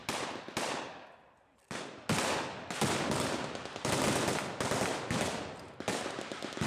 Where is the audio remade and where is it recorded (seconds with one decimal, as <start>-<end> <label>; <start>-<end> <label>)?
0.0-6.7 recorded